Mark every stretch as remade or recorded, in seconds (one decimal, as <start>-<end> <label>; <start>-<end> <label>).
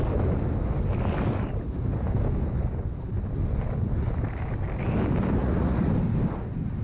0.0-5.4 recorded; 5.4-5.9 remade; 5.9-6.8 recorded